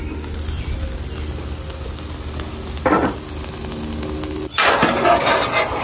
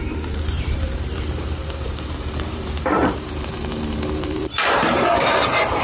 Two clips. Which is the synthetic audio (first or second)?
second